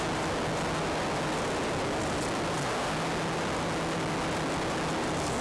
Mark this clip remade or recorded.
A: recorded